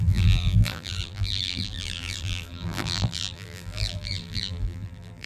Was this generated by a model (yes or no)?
yes